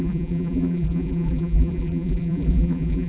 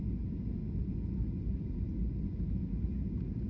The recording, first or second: second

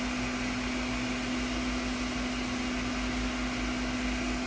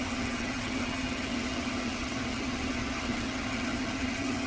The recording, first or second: first